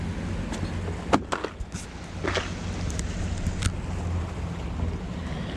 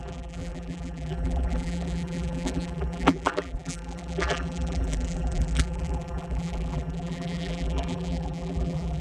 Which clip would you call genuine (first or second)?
first